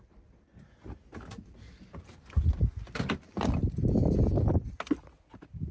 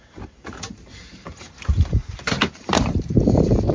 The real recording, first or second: first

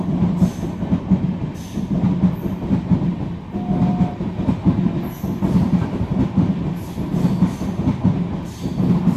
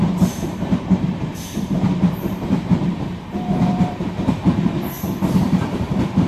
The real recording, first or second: first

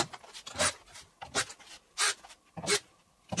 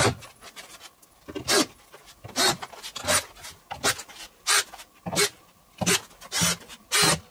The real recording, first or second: second